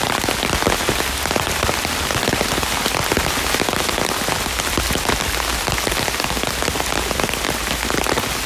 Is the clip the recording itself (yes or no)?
yes